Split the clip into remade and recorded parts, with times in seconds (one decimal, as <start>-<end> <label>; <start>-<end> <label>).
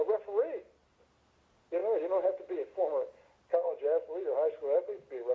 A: 0.0-5.3 recorded